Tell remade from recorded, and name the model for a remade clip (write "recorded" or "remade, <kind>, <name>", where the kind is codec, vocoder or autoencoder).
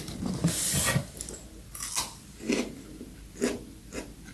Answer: recorded